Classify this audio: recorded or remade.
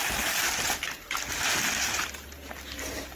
recorded